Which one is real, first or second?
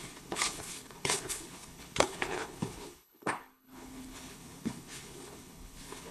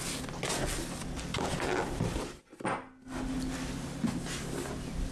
second